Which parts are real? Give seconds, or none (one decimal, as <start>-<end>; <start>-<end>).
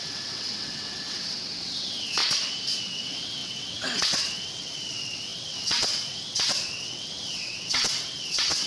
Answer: 2.2-2.8